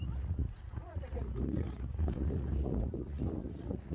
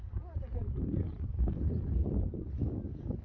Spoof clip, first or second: first